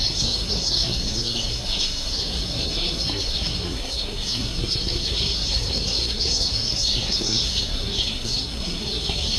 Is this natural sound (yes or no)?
no